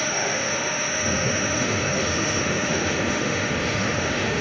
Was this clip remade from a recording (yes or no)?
yes